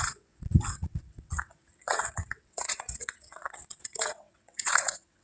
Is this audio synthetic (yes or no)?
yes